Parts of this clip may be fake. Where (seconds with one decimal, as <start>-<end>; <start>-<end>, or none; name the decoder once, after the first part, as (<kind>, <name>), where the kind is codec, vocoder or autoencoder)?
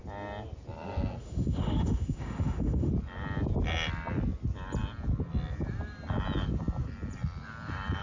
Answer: 1.2-2.9 (autoencoder, DAC-VAE)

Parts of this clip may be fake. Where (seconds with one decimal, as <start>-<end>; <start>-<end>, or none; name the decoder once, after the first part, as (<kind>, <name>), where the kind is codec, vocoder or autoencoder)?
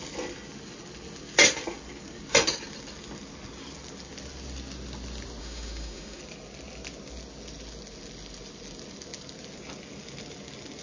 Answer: 5.4-6.2 (autoencoder, DAC-VAE)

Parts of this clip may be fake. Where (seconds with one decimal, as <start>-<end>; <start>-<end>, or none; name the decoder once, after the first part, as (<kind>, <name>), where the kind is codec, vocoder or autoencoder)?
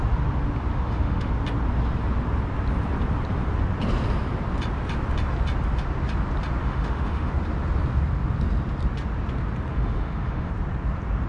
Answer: 0.7-1.3 (autoencoder, DAC-VAE); 6.6-7.3; 9.7-10.5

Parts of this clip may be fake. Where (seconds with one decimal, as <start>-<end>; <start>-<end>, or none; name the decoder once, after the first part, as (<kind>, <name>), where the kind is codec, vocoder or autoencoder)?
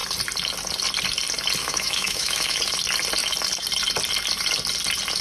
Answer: 1.6-2.6 (autoencoder, DAC-VAE)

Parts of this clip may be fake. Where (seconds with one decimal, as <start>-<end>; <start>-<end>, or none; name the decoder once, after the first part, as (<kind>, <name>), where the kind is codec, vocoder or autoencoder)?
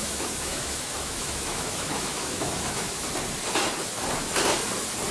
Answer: 0.0-3.1 (autoencoder, DAC-VAE)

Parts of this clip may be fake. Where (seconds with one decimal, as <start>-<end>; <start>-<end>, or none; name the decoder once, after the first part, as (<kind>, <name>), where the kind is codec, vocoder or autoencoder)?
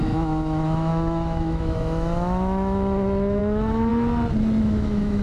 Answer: 0.0-3.9 (autoencoder, DAC-VAE); 4.6-5.2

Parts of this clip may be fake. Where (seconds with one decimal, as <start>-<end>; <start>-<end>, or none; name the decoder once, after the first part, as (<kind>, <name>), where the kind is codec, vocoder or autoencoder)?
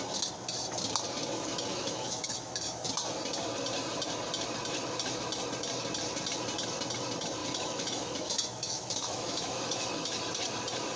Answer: 1.7-2.9 (autoencoder, DAC-VAE); 7.4-10.2